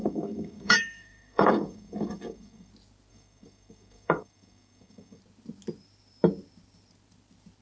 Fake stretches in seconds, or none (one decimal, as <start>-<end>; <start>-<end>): 0.0-2.7; 3.1-5.2